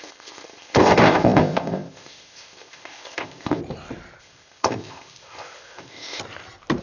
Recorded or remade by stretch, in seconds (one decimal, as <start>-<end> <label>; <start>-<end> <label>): 0.0-3.6 remade; 3.6-4.2 recorded; 4.2-6.2 remade; 6.2-6.8 recorded